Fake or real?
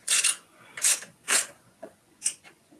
fake